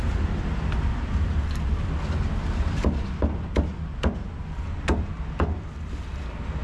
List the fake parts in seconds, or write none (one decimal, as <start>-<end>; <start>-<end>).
none